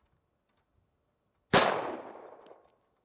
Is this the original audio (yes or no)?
yes